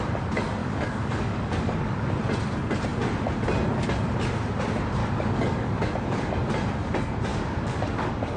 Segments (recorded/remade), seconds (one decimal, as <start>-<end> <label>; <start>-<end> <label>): 0.0-0.6 recorded; 0.6-2.1 remade; 2.1-5.0 recorded; 5.0-6.3 remade; 6.3-7.3 recorded; 7.3-8.4 remade